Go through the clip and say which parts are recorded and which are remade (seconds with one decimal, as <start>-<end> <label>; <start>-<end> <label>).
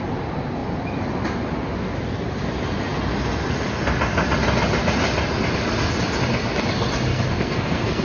0.0-7.1 recorded; 7.1-8.0 remade